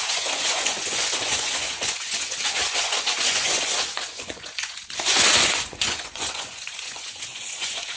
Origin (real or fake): fake